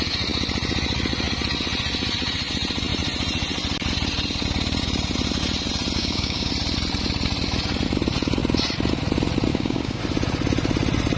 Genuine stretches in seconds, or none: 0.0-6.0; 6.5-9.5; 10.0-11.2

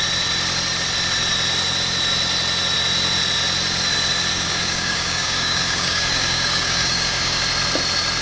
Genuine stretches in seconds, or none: 0.0-4.3; 7.4-8.2

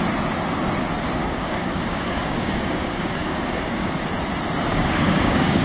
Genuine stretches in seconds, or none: 0.0-1.2; 3.9-4.7

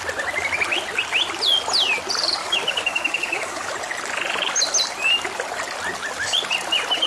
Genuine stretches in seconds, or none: 0.0-2.4; 3.7-7.1

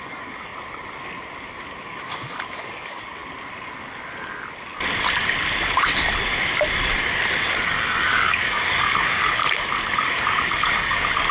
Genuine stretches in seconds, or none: 0.5-1.8; 3.2-7.5; 9.4-10.0

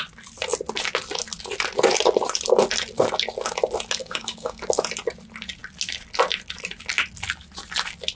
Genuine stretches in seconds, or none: 0.0-4.0; 4.6-8.2